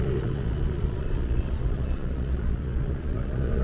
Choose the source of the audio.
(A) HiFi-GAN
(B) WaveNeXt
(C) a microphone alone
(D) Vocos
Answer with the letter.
D